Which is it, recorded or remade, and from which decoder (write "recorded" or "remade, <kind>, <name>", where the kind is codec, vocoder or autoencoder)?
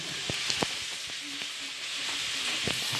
recorded